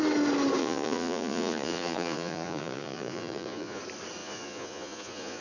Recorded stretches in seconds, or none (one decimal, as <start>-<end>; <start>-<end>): 0.0-0.6; 3.8-4.2